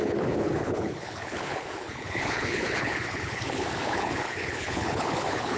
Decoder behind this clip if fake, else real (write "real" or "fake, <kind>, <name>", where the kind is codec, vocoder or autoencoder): fake, codec, HILCodec